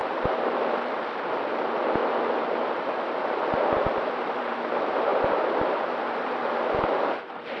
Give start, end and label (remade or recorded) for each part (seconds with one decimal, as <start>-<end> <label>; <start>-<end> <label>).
0.0-0.6 recorded; 0.6-2.0 remade; 2.0-3.1 recorded; 3.1-7.6 remade